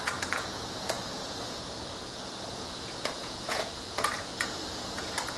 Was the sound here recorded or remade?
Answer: remade